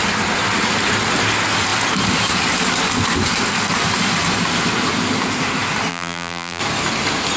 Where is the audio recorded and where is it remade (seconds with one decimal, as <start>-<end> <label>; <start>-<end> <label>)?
0.0-5.9 recorded; 5.9-6.6 remade; 6.6-7.4 recorded